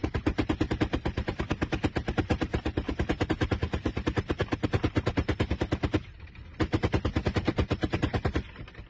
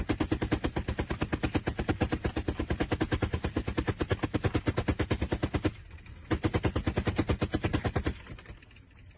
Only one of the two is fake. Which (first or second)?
first